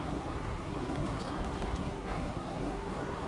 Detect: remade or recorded remade